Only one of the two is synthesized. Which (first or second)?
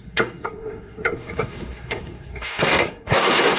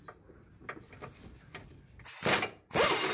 first